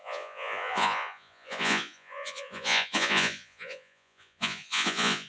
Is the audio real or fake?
fake